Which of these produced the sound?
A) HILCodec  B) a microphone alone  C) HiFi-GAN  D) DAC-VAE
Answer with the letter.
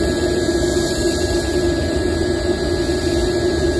B